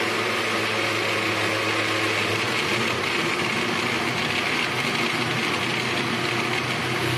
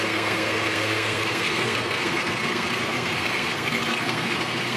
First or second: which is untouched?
first